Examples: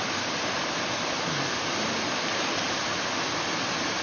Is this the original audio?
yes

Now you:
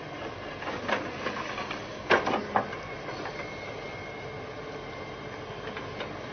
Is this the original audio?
yes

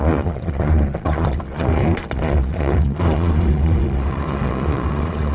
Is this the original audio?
no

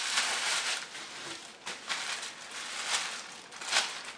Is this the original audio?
yes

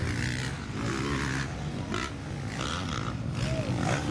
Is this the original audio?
yes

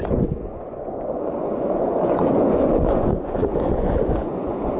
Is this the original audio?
no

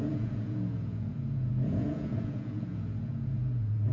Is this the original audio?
no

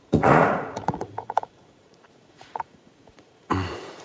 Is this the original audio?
no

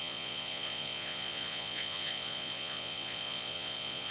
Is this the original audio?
no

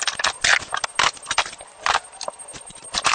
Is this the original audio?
yes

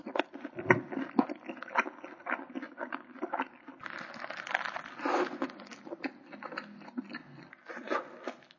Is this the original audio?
yes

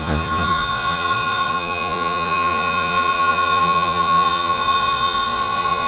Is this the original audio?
no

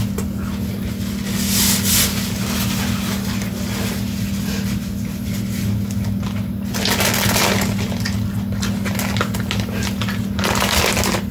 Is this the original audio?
yes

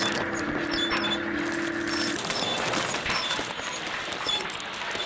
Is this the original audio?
yes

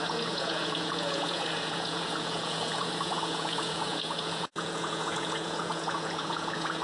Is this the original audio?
no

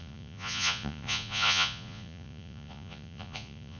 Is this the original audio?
no